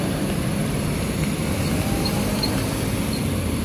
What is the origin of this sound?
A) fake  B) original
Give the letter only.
A